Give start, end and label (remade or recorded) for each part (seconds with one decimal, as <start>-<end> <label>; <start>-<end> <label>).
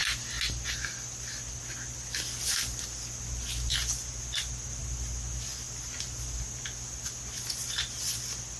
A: 0.0-8.6 recorded